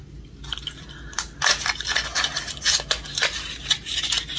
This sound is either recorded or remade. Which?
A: recorded